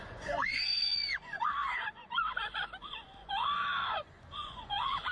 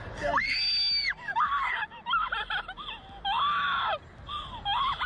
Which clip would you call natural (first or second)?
second